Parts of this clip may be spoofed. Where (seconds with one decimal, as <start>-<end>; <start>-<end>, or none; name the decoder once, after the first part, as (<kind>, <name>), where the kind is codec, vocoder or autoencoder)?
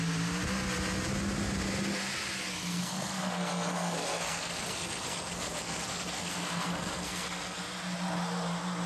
2.6-7.6 (codec, SNAC)